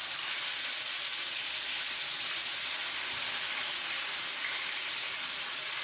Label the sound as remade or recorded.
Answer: recorded